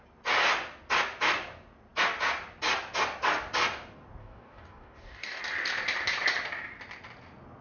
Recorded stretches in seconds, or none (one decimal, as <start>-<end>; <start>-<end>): 0.0-4.2; 5.4-7.6